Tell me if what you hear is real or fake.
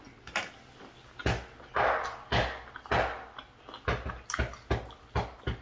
real